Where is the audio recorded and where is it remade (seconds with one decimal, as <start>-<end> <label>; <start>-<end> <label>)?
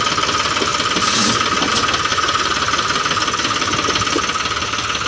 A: 0.0-2.1 recorded; 2.1-3.0 remade; 3.0-5.1 recorded